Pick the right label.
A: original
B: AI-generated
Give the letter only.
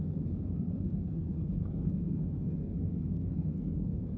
B